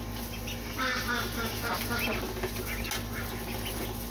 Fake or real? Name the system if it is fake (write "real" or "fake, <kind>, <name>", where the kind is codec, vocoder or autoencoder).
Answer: real